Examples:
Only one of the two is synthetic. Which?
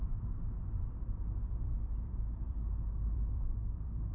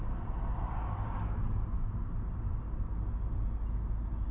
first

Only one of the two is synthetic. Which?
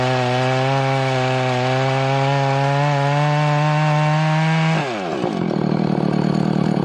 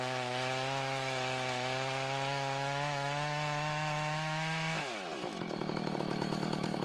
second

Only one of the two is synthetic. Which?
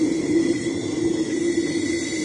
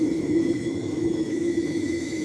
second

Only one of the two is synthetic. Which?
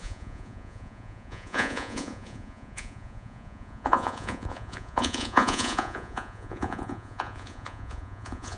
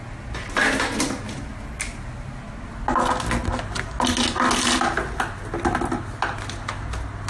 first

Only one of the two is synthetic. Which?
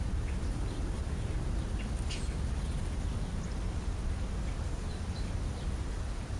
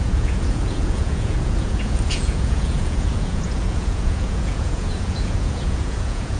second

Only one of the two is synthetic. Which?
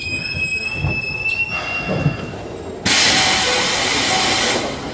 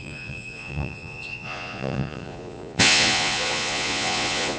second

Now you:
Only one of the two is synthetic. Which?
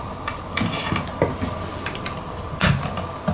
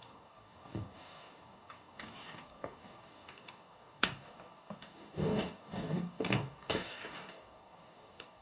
second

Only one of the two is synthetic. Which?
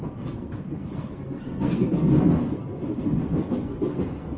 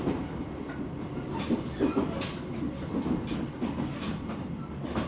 first